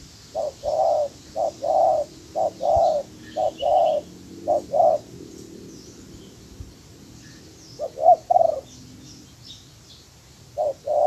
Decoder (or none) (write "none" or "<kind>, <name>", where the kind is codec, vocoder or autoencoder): none